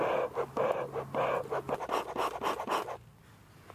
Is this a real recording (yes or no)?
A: yes